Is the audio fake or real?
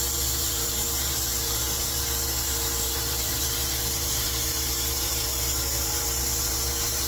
fake